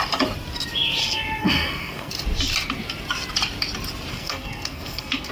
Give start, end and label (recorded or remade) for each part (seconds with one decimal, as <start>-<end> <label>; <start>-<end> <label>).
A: 0.0-1.0 recorded; 1.0-2.1 remade; 2.1-4.1 recorded; 4.1-5.3 remade